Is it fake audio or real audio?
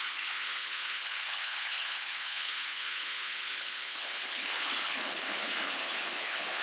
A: fake